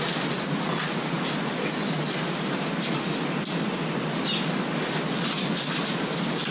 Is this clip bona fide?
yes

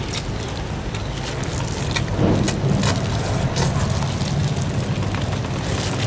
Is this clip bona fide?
yes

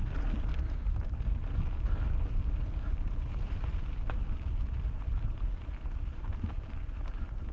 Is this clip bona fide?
yes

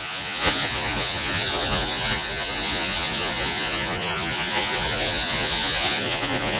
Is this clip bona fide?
no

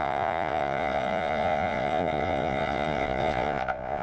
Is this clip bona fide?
no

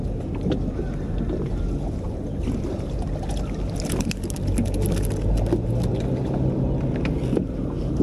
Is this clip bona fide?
yes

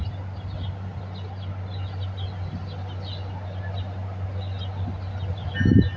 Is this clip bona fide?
yes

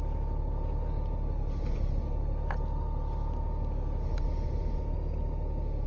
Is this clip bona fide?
yes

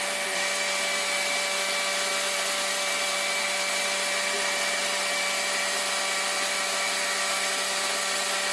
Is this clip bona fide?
yes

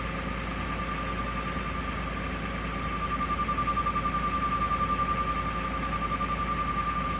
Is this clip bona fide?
yes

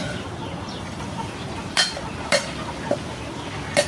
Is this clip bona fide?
no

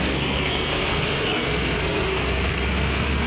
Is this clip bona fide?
no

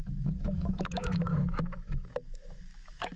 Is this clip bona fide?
no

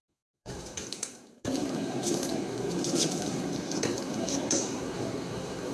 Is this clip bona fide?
no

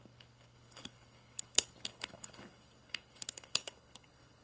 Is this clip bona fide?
no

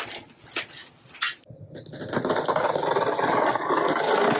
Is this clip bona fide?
yes